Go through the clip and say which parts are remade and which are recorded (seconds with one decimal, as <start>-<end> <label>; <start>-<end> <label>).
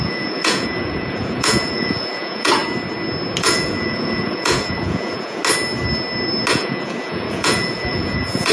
0.0-2.6 remade; 2.6-3.4 recorded; 3.4-5.4 remade; 5.4-6.5 recorded; 6.5-8.5 remade